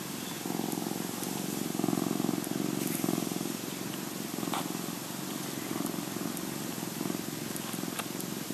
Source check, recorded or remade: recorded